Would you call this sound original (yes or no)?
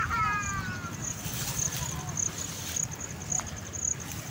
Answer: yes